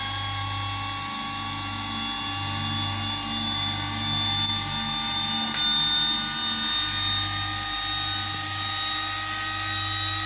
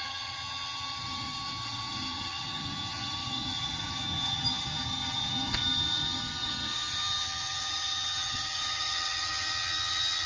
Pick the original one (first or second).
first